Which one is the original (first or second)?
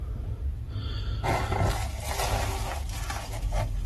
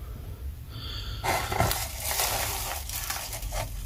first